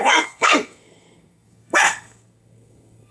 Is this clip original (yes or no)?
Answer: no